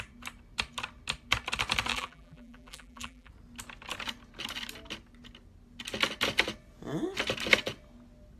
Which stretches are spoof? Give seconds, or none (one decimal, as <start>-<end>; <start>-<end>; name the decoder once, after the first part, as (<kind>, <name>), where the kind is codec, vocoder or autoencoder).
1.9-3.3 (vocoder, BigVGAN v2)